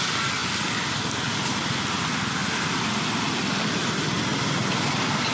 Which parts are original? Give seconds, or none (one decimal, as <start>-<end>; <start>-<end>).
0.0-5.3